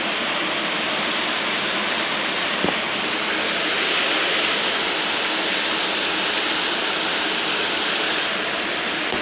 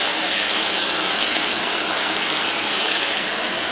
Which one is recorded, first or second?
first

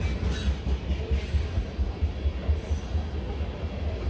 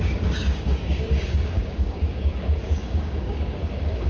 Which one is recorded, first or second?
first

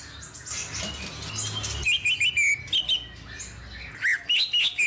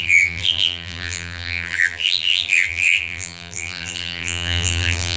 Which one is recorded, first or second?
first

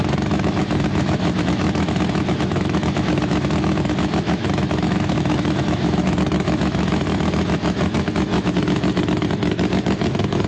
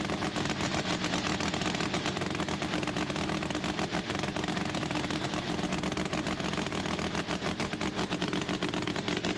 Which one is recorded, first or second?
second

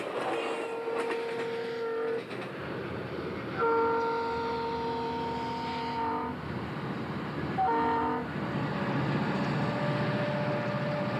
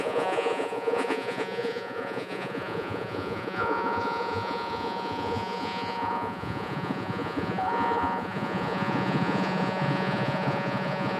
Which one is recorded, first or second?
first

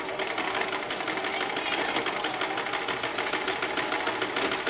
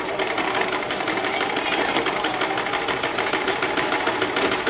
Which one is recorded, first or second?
first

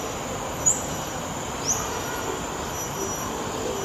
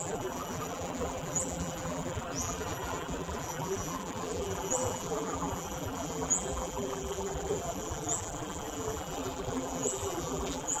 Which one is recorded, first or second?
first